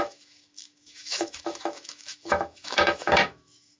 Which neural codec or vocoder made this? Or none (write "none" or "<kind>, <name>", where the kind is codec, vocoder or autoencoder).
autoencoder, DAC-VAE